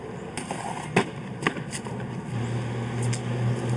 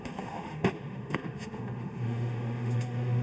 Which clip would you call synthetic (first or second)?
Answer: second